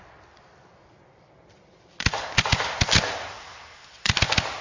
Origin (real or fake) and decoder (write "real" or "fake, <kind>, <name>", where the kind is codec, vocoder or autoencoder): real